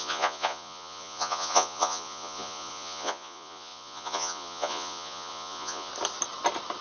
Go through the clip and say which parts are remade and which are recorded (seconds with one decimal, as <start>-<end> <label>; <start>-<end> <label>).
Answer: 0.0-5.9 remade; 5.9-6.8 recorded